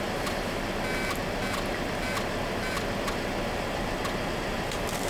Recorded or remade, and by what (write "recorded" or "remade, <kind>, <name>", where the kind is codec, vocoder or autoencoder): recorded